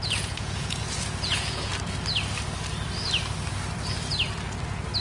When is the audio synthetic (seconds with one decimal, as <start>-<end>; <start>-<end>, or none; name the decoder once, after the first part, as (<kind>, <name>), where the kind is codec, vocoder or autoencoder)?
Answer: 0.0-1.7 (vocoder, Vocos)